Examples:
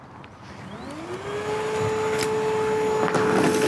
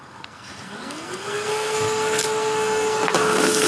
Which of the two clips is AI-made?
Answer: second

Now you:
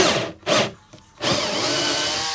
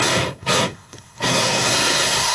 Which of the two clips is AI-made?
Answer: second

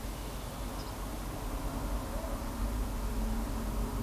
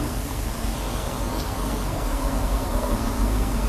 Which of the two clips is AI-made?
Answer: second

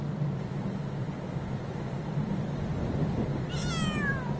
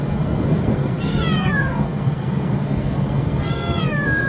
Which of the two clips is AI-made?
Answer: second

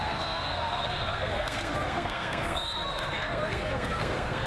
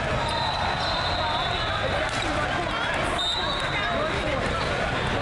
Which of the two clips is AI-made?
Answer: first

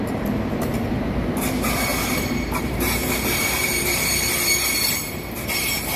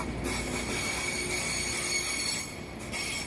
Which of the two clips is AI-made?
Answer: first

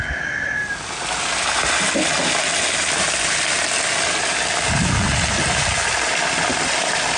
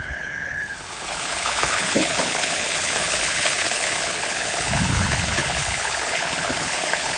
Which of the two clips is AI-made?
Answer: second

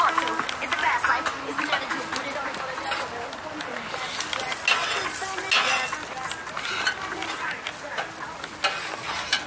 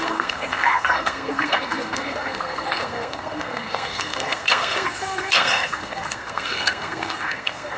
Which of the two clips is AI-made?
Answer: second